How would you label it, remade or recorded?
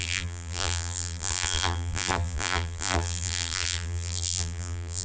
remade